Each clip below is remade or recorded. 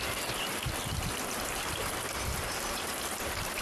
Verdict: recorded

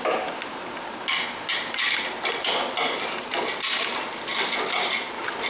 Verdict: recorded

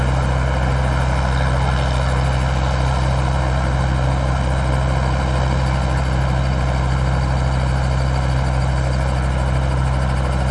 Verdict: recorded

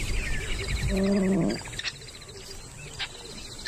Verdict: recorded